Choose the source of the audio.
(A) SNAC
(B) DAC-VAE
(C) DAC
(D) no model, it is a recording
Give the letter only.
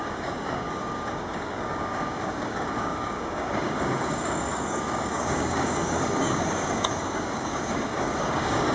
C